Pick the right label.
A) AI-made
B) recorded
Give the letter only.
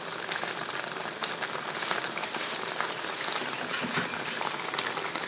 B